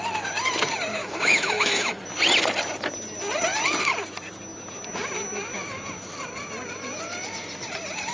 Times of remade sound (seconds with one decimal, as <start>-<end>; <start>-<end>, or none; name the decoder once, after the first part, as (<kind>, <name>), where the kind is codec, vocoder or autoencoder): 1.0-2.0 (autoencoder, DAC-VAE)